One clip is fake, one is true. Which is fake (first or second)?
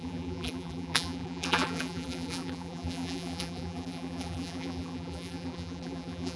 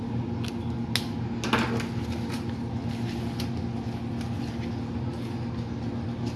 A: first